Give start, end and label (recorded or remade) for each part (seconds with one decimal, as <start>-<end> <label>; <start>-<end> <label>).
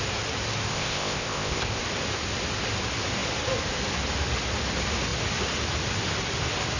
0.0-0.7 recorded; 0.7-1.8 remade; 1.8-6.8 recorded